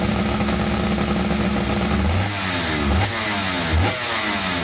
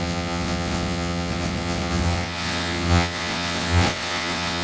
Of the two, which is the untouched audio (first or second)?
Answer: first